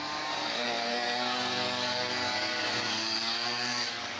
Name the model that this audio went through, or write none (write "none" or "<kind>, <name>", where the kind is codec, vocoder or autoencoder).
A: codec, DAC